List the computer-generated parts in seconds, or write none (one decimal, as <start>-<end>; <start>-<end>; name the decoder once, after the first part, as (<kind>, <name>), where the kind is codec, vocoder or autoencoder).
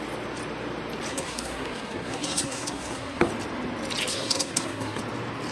1.1-3.3 (codec, SNAC); 4.1-5.0